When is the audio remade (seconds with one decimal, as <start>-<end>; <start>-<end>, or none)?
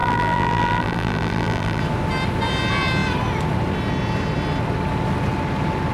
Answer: 0.0-1.8